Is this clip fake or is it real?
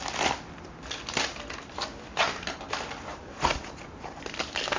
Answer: real